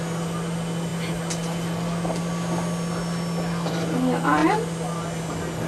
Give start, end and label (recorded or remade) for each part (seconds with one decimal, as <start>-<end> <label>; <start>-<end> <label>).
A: 0.0-5.7 recorded